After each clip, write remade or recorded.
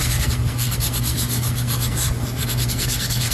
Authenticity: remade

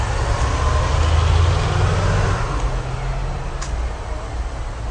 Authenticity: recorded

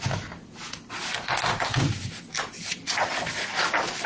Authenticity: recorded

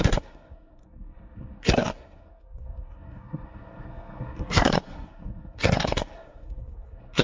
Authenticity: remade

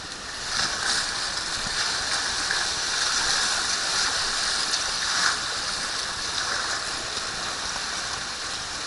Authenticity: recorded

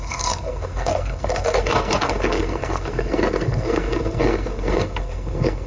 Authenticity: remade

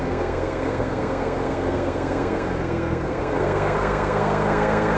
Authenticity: remade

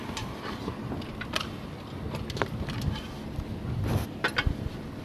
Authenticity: recorded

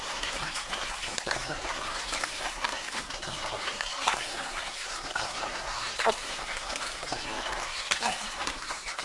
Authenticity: remade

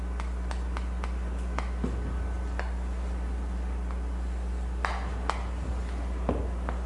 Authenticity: recorded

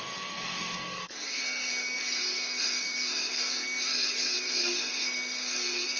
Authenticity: remade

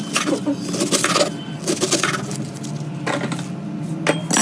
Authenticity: recorded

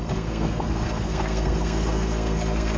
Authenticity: remade